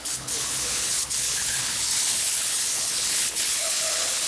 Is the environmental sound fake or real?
fake